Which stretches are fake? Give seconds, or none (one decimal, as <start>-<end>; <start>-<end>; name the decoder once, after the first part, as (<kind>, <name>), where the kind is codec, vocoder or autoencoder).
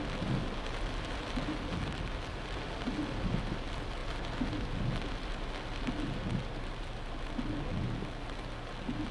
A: none